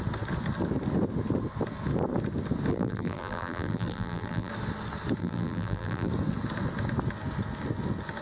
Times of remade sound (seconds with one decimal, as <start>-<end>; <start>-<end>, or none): 2.7-4.5; 5.2-6.1